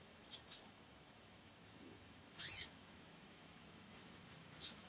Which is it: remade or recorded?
remade